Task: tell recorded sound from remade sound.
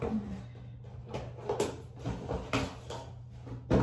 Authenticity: recorded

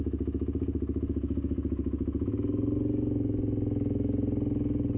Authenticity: recorded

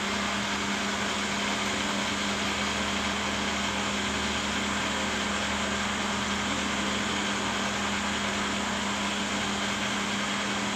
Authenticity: recorded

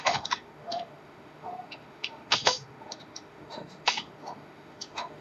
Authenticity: remade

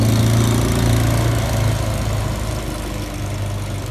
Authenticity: recorded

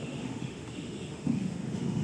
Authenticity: remade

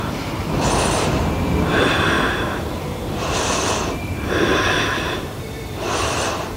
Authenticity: remade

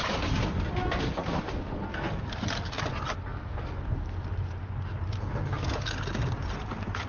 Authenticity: recorded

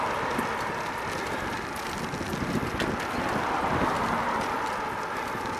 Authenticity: recorded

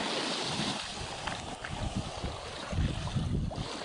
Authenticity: remade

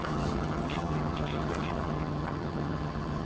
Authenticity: remade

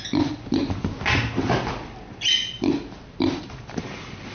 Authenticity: recorded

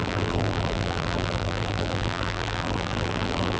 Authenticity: remade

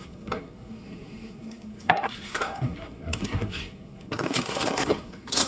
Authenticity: remade